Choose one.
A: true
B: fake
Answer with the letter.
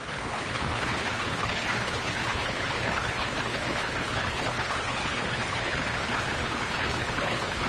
B